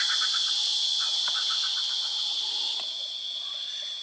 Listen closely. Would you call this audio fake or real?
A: real